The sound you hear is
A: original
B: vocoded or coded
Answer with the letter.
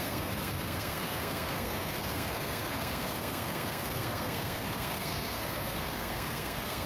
B